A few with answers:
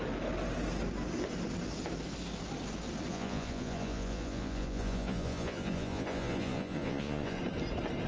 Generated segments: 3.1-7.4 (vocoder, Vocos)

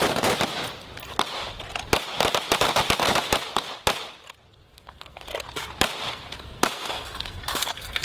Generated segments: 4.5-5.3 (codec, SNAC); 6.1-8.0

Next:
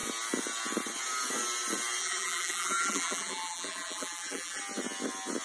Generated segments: 2.0-4.6 (vocoder, BigVGAN v2)

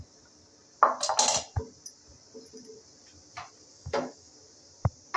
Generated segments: 3.7-4.3 (autoencoder, DAC-VAE)

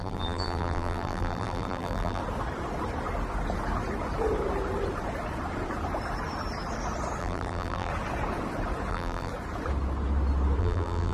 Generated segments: 0.0-2.2 (vocoder, BigVGAN v2); 7.2-7.9; 8.9-9.3; 10.6-11.1

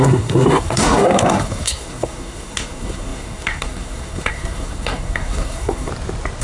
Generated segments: 0.0-5.9 (codec, SNAC)

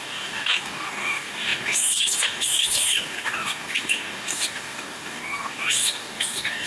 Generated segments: 0.0-6.7 (codec, DAC)

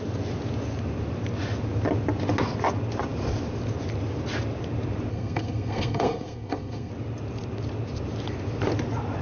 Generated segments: 5.1-6.9 (codec, SNAC)